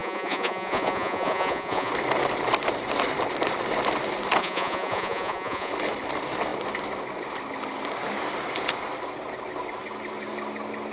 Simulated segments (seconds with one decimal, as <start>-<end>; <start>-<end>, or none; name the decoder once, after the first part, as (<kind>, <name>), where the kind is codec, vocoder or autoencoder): 0.0-1.9 (vocoder, Vocos); 4.4-5.7